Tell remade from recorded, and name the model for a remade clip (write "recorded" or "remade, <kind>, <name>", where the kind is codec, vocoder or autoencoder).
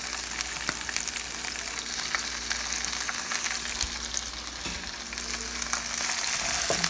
recorded